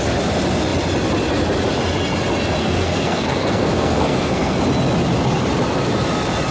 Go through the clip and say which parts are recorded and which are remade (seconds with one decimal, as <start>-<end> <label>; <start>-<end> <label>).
0.0-2.6 recorded; 2.6-4.6 remade; 4.6-6.5 recorded